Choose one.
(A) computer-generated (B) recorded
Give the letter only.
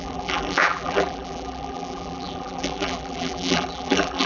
A